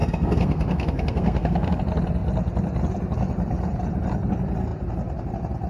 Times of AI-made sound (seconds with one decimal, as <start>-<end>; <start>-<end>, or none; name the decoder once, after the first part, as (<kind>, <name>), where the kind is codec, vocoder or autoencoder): 0.0-1.8 (codec, SNAC)